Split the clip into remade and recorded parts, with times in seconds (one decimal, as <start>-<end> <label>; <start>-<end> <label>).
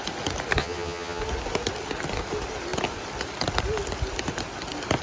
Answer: 0.0-0.6 recorded; 0.6-1.2 remade; 1.2-5.0 recorded